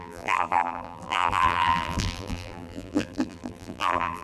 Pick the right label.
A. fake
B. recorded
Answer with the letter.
A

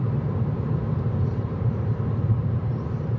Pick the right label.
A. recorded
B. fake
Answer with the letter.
B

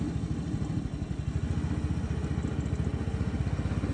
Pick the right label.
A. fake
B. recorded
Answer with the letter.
B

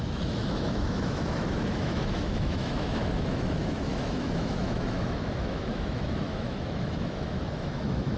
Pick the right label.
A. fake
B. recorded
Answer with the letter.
A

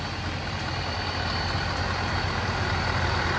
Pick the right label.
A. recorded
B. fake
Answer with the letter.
A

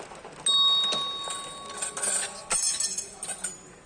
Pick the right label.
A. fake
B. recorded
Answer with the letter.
B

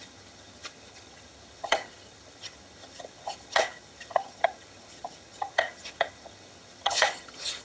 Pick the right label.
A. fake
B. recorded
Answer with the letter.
A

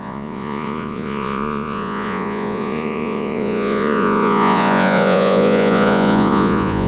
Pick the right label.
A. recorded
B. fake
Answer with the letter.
B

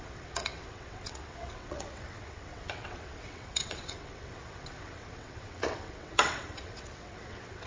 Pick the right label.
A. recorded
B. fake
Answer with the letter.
B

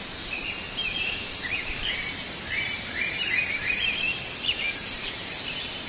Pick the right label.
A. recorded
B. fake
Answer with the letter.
B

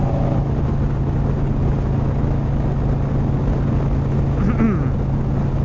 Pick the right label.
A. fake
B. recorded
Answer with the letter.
B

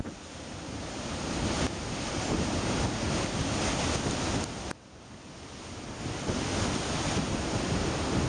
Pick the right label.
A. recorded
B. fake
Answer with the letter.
A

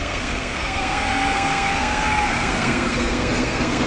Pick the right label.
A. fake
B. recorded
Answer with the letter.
A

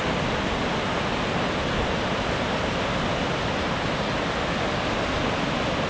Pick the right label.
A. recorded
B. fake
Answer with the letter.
A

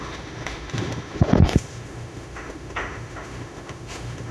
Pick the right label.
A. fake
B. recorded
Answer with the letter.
A